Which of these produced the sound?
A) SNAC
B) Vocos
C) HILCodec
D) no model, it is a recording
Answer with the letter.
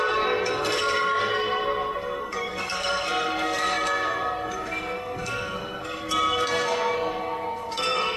A